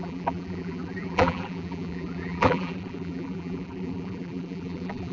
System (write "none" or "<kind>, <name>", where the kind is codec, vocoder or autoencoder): vocoder, BigVGAN v2